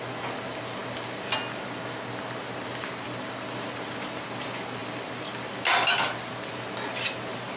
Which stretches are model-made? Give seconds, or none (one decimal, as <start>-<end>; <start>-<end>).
none